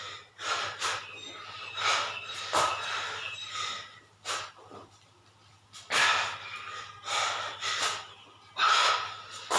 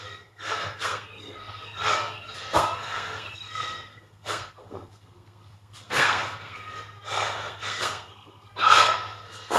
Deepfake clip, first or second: second